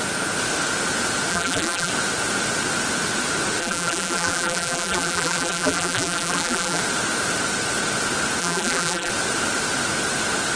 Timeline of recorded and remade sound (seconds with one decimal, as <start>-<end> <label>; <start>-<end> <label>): 0.0-1.3 recorded; 1.3-1.9 remade; 1.9-3.6 recorded; 3.6-6.8 remade; 6.8-8.4 recorded; 8.4-9.1 remade; 9.1-10.6 recorded